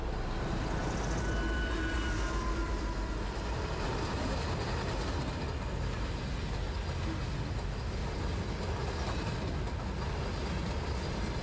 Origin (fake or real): real